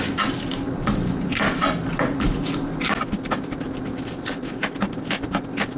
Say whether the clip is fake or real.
real